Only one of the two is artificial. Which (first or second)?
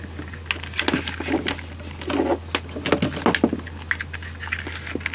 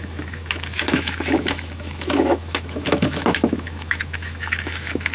second